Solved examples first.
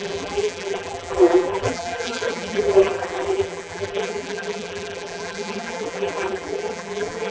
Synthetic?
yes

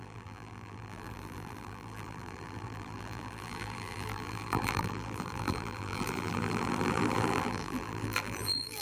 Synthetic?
yes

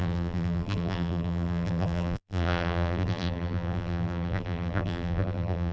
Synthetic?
yes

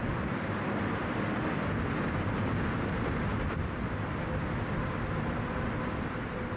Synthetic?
yes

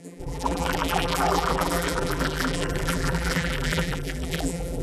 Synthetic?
yes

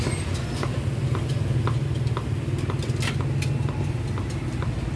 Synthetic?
no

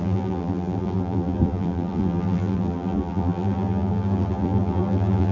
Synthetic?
yes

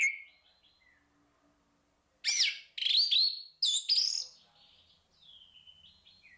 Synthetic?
no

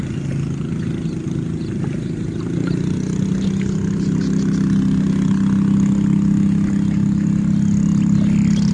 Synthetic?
no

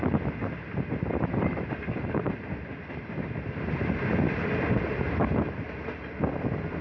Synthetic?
no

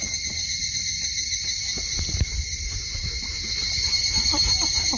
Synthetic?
yes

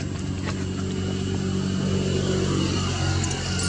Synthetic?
no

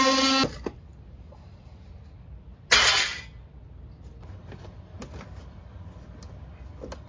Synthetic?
no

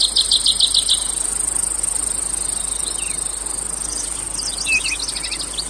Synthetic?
no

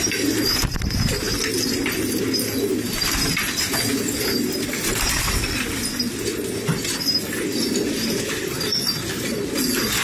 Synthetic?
no